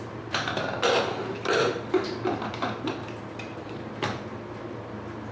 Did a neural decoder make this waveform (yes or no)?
no